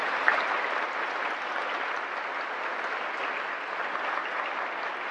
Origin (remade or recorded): recorded